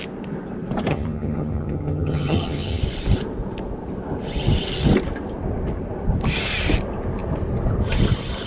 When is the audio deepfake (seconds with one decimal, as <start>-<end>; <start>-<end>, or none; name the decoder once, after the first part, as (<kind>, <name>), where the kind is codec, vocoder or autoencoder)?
0.9-2.8 (vocoder, HiFi-GAN)